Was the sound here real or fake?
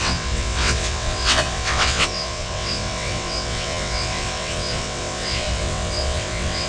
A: fake